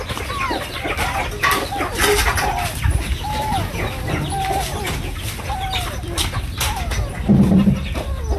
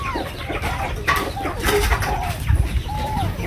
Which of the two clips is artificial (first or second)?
second